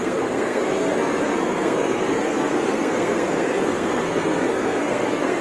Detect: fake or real fake